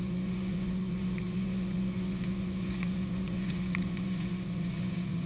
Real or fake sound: fake